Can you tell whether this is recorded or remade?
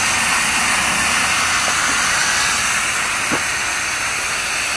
recorded